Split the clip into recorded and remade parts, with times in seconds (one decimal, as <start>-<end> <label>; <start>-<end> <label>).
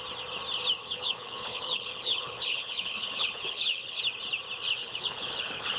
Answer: 0.0-0.8 recorded; 0.8-4.0 remade; 4.0-4.8 recorded; 4.8-5.8 remade